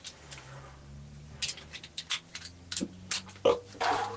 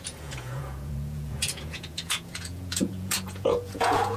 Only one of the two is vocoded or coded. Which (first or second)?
second